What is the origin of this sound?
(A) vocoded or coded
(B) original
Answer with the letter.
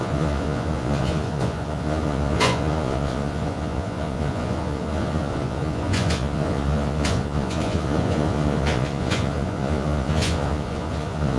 A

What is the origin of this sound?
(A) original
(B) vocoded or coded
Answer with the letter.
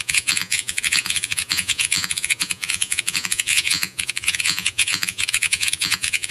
B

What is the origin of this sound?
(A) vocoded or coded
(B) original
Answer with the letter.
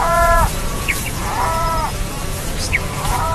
A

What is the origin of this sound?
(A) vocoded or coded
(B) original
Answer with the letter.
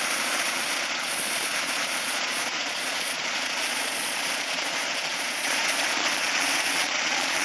A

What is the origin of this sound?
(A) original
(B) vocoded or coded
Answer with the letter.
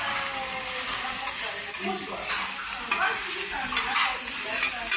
A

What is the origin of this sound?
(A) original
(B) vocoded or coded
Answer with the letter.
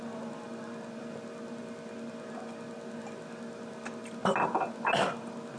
A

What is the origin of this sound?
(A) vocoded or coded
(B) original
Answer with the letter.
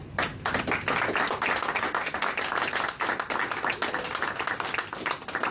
B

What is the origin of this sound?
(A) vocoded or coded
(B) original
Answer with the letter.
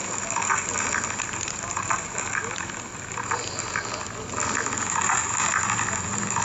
B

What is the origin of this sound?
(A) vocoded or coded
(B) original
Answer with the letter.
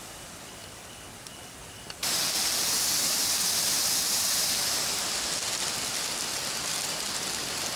B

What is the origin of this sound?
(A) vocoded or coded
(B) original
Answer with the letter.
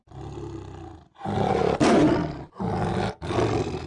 B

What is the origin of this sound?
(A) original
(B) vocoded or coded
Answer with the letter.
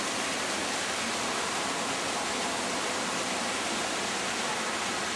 A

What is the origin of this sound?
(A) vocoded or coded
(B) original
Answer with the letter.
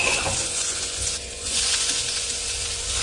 A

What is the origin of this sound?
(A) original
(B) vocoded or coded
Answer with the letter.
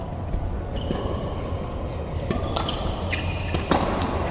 A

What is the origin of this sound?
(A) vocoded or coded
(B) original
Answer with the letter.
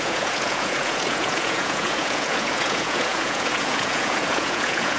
A